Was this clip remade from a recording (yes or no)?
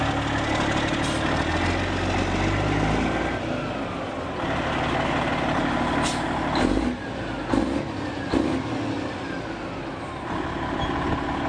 no